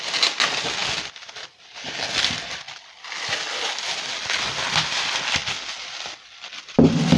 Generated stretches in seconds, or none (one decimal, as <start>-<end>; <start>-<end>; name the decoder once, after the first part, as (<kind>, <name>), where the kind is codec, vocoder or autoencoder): none

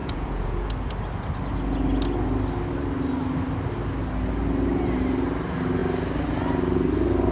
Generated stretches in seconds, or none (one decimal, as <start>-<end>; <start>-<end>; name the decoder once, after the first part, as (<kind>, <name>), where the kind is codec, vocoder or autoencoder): 0.0-0.7 (vocoder, Vocos)

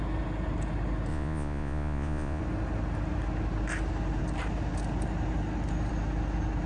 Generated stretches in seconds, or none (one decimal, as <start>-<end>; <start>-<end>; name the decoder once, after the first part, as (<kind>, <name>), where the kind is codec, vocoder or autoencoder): 1.1-2.4 (vocoder, Vocos)

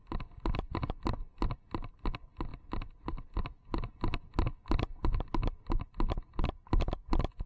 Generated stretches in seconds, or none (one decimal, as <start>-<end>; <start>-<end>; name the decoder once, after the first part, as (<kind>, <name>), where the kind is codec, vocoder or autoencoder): none

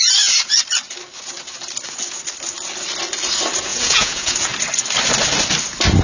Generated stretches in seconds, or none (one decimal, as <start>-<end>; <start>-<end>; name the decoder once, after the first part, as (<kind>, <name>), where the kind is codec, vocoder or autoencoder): 3.7-4.5 (vocoder, Vocos)

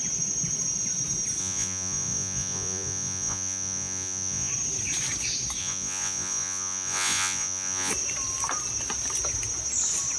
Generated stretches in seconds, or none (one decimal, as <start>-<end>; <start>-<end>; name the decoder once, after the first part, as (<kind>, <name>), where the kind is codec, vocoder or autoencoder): 1.4-4.5 (vocoder, Vocos); 5.6-7.9